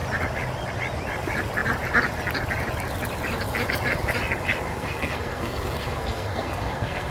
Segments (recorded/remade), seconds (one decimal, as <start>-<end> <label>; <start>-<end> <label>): 0.0-4.7 recorded; 4.7-7.1 remade

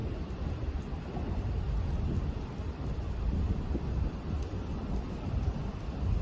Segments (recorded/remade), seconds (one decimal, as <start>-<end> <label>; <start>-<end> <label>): 0.0-6.2 recorded

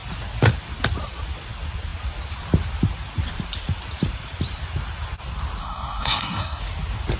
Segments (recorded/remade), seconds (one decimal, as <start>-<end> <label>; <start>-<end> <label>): 0.0-5.6 recorded; 5.6-6.6 remade; 6.6-7.2 recorded

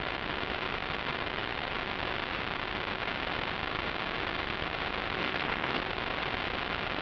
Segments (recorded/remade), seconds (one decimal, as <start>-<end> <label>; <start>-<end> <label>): 0.0-5.2 recorded; 5.2-5.8 remade; 5.8-7.0 recorded

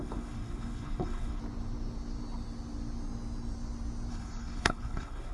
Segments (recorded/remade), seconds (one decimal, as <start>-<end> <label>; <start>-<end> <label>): 0.0-1.4 remade; 1.4-4.1 recorded; 4.1-5.3 remade

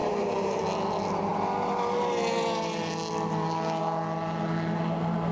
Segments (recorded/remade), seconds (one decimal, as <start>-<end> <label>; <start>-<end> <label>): 0.0-0.6 remade; 0.6-5.3 recorded

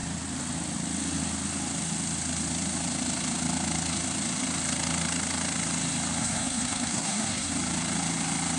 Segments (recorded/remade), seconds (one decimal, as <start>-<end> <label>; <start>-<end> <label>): 0.0-6.2 recorded; 6.2-7.5 remade; 7.5-8.6 recorded

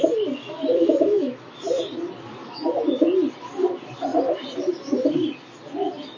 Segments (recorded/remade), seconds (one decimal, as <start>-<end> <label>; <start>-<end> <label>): 0.0-0.4 recorded; 0.4-1.6 remade; 1.6-2.4 recorded; 2.4-2.9 remade; 2.9-6.2 recorded